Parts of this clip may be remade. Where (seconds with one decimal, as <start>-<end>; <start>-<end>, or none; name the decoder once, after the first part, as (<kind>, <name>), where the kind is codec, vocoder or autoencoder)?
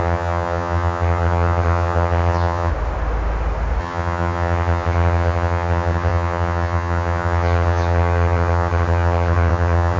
0.0-2.7 (vocoder, HiFi-GAN); 3.8-10.0